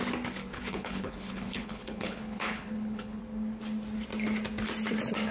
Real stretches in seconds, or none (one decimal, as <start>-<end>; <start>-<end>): 0.0-0.4; 3.2-5.3

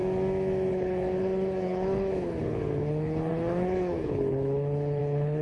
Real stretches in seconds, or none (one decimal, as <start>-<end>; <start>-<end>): 0.0-0.7

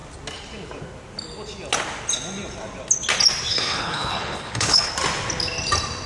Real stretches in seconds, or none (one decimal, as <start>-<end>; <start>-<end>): 0.0-3.5; 4.9-6.1

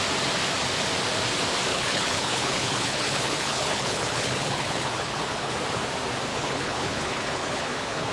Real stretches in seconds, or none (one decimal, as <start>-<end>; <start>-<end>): 0.0-1.7; 5.5-6.3

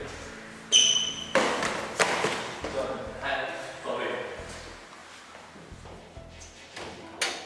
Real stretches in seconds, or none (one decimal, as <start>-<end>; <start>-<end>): 0.0-7.5

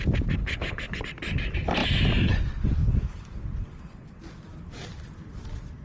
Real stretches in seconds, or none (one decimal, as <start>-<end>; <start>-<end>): 0.0-0.4; 1.0-5.8